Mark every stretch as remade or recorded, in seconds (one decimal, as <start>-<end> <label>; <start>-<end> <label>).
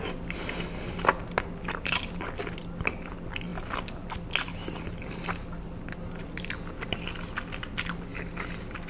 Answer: 0.0-8.9 recorded